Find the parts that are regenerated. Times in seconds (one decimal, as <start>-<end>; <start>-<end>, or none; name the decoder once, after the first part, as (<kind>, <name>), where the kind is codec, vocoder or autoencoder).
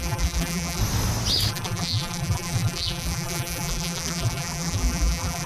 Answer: 0.0-0.8 (vocoder, BigVGAN v2); 1.5-5.5